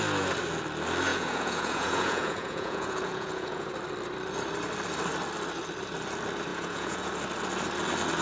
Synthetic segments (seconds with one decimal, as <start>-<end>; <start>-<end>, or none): 1.1-3.7; 6.5-7.1